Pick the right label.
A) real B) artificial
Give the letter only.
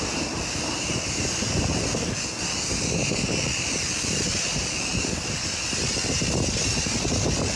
A